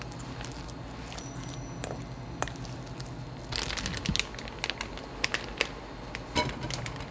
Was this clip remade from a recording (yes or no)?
no